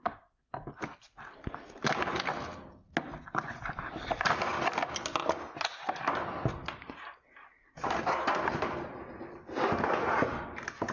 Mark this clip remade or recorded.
recorded